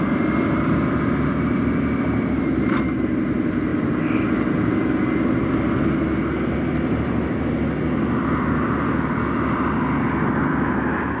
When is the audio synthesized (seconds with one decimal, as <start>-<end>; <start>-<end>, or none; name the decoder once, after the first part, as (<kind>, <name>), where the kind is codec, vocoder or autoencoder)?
none